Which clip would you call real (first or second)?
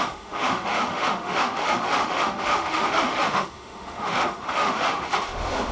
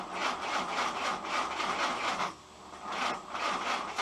second